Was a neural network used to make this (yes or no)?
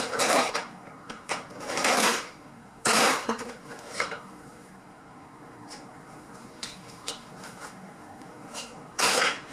yes